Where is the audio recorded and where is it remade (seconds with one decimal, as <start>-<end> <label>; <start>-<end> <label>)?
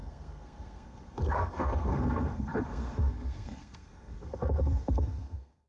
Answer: 0.0-5.7 remade